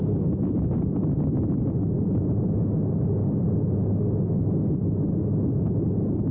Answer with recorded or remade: recorded